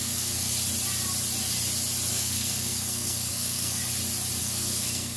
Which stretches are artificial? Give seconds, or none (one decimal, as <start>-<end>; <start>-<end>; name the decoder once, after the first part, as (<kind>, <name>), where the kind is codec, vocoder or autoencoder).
0.0-0.5 (codec, SNAC); 2.1-3.8; 4.4-5.2